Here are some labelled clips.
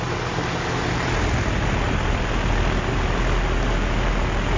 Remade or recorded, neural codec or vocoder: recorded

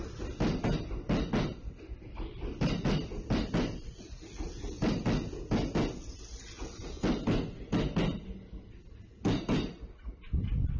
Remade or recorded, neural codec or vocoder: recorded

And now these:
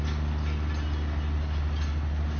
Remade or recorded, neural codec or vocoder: recorded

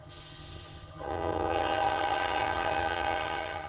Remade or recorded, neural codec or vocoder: remade, vocoder, HiFi-GAN